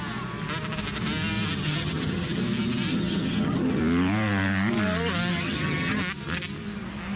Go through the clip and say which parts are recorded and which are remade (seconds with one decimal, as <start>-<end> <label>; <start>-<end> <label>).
0.0-1.6 recorded; 1.6-2.4 remade; 2.4-2.9 recorded; 2.9-3.8 remade; 3.8-5.3 recorded; 5.3-6.0 remade; 6.0-7.2 recorded

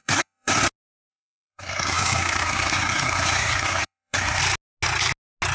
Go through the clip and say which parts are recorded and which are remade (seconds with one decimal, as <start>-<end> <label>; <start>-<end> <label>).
0.0-0.6 remade; 0.6-1.1 recorded; 1.1-4.4 remade; 4.4-5.5 recorded

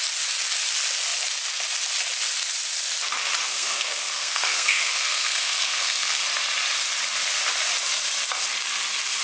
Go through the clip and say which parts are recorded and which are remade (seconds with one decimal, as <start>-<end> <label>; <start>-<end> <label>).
0.0-3.4 recorded; 3.4-6.2 remade; 6.2-9.2 recorded

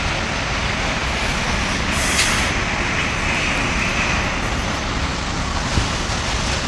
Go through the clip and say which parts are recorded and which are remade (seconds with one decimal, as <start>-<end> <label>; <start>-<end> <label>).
0.0-6.7 recorded

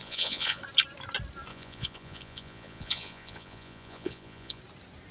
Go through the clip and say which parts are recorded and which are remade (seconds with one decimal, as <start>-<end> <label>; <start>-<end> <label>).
0.0-0.6 remade; 0.6-1.5 recorded; 1.5-4.6 remade; 4.6-5.1 recorded

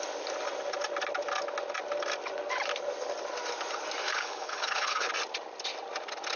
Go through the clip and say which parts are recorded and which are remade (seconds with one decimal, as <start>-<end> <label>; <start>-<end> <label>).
0.0-4.0 recorded; 4.0-5.1 remade; 5.1-6.4 recorded